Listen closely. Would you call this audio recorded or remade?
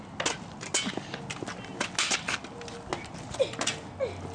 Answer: recorded